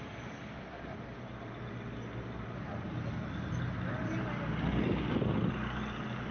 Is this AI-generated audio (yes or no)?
no